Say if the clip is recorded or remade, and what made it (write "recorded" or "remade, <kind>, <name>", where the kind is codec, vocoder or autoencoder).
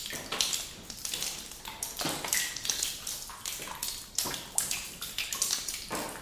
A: recorded